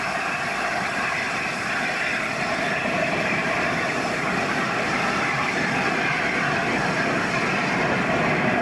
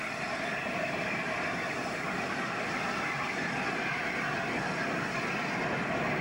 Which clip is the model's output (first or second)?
first